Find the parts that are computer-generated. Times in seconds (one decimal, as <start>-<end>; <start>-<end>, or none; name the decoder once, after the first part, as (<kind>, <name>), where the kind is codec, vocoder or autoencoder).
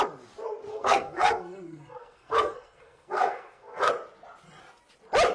0.7-3.9 (codec, SNAC)